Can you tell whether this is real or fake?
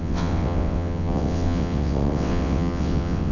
fake